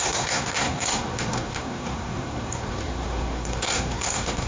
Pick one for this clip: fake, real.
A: fake